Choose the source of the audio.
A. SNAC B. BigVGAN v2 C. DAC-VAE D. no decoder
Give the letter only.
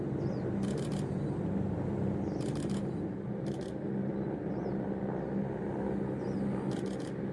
D